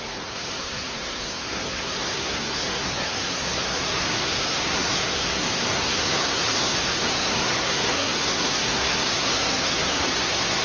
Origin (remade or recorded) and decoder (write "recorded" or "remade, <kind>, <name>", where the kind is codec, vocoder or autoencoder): remade, codec, SNAC